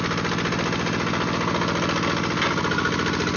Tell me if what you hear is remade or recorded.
recorded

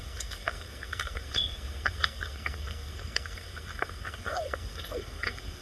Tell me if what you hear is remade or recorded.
remade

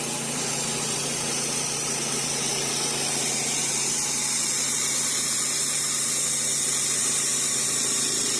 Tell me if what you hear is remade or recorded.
recorded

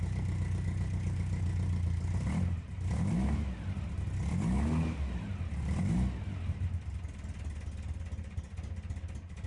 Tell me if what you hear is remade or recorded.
recorded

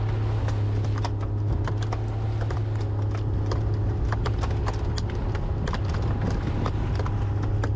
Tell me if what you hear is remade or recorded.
recorded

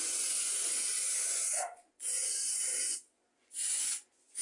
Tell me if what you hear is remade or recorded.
remade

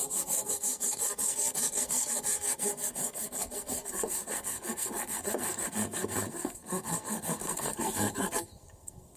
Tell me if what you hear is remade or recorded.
remade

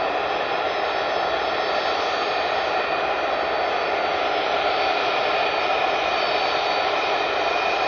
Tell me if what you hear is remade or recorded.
recorded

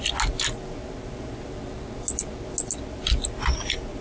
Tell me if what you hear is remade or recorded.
recorded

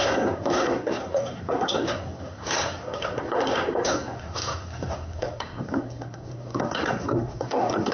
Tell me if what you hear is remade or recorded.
remade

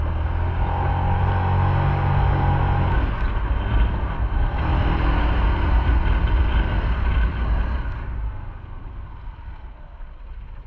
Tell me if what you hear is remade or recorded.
recorded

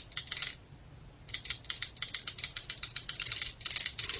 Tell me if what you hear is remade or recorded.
recorded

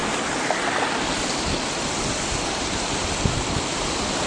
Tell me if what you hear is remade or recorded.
recorded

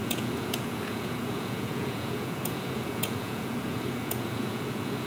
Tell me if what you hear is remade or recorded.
remade